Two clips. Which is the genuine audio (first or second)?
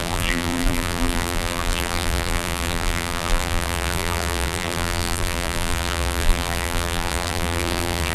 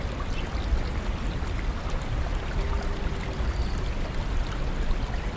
second